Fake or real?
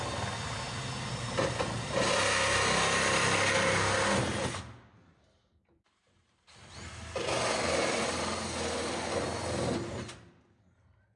real